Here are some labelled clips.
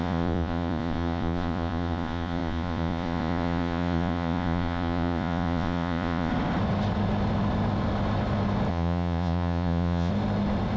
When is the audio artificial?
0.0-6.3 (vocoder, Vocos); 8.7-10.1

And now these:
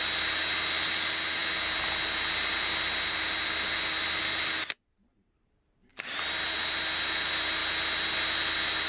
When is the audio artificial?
none

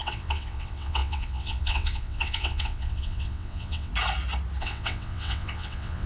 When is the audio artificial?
0.0-3.9 (vocoder, WaveNeXt); 4.6-6.1

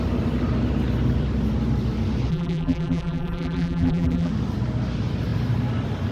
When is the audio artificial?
2.3-4.3 (vocoder, BigVGAN v2)

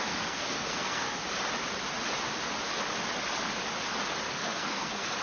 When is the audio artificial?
0.0-1.2 (codec, SNAC); 4.3-5.2

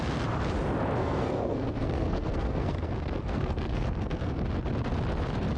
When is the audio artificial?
1.0-4.4 (codec, SNAC)

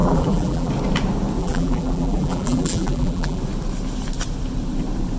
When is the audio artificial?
0.0-0.7 (vocoder, BigVGAN v2); 1.4-3.4